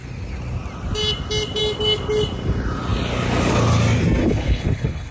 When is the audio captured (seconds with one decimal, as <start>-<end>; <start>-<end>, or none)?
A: 0.0-4.2